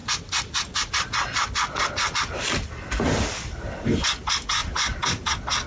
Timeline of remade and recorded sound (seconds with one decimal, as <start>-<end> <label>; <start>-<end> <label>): 0.0-5.7 recorded